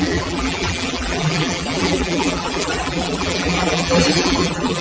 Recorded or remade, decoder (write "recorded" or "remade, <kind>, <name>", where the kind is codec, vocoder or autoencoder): remade, vocoder, BigVGAN v2